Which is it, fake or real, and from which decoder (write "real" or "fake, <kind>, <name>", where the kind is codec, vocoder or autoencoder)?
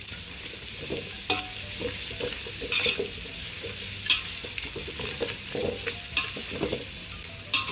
real